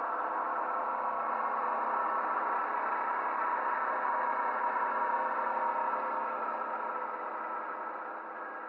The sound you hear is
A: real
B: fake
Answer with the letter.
A